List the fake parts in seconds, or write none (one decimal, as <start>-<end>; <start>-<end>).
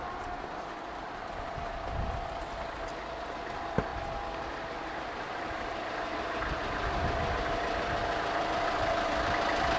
1.0-1.5